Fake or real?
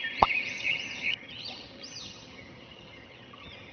fake